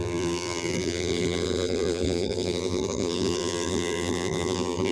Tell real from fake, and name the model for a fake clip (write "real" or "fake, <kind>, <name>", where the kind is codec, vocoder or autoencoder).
fake, vocoder, BigVGAN v2